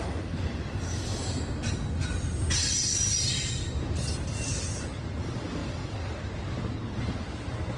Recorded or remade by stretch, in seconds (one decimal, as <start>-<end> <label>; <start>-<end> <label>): 0.0-7.8 recorded